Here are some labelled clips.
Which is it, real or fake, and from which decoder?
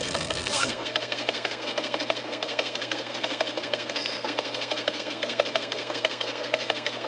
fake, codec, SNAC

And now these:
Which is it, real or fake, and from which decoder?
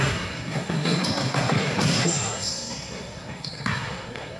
fake, codec, SNAC